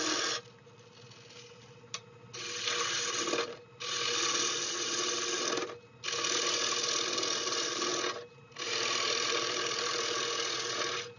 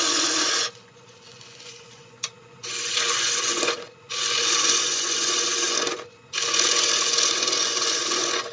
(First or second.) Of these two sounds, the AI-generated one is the second